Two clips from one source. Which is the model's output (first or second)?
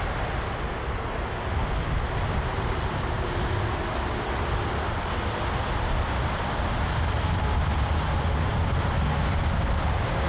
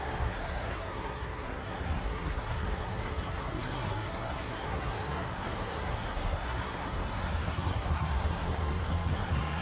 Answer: second